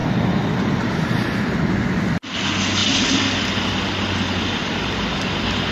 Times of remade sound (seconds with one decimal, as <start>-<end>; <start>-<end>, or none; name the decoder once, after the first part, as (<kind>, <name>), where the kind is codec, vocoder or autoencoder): none